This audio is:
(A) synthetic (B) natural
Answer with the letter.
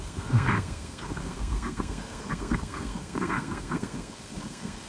A